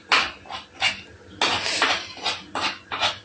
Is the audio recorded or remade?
recorded